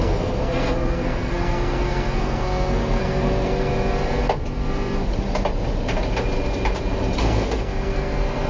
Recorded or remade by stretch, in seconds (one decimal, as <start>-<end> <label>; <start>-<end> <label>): 0.0-3.7 remade; 3.7-7.2 recorded; 7.2-8.5 remade